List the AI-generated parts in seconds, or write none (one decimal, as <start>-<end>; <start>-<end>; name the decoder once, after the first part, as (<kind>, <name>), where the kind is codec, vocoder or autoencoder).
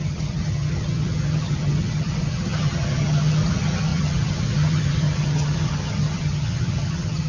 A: 0.0-7.3 (vocoder, HiFi-GAN)